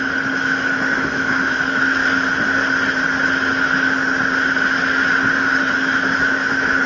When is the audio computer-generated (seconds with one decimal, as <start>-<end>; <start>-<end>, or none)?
0.0-2.0; 5.6-6.9